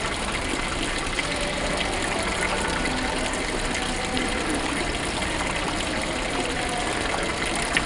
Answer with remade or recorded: recorded